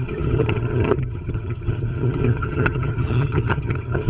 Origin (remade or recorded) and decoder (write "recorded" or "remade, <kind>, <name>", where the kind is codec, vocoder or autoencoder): remade, vocoder, HiFi-GAN